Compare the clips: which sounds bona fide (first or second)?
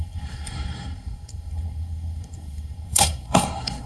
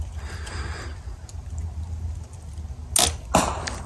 second